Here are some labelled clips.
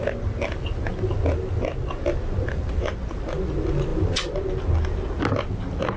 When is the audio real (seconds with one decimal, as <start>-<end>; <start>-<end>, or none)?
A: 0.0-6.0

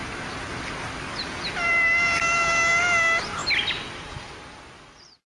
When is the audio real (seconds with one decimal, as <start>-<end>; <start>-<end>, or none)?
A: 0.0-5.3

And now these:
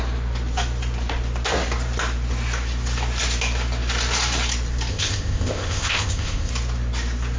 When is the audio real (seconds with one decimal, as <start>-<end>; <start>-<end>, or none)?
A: 0.0-4.9; 6.5-7.4

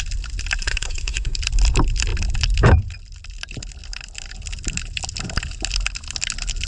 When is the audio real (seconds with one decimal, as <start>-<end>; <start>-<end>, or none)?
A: 0.0-0.6; 1.4-6.7